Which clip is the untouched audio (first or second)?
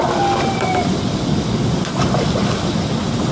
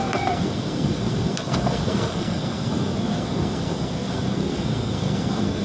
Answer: first